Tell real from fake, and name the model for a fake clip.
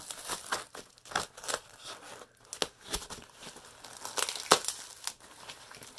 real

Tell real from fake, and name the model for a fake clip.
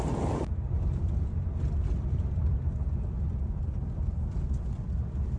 real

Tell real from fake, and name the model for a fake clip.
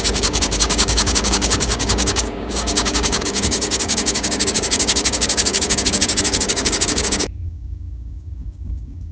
fake, codec, DAC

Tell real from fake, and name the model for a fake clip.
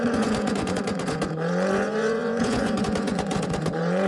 fake, vocoder, Vocos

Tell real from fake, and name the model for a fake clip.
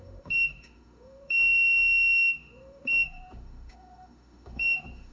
fake, autoencoder, DAC-VAE